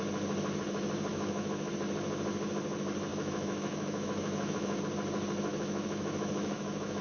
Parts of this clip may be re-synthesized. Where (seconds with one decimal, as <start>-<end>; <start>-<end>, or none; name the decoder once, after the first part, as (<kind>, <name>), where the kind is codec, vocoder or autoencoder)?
1.1-1.7 (autoencoder, DAC-VAE); 3.1-4.8; 5.5-7.0